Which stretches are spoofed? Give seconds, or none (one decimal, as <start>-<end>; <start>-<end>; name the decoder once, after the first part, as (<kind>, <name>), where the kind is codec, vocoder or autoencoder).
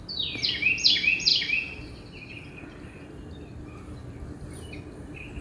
none